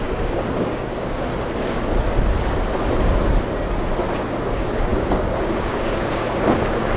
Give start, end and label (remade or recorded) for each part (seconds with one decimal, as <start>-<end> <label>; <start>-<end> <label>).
0.0-1.3 remade; 1.3-4.5 recorded; 4.5-7.0 remade